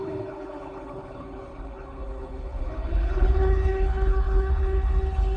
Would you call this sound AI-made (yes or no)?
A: yes